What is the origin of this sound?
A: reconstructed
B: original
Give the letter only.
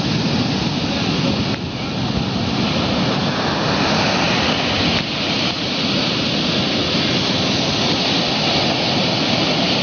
B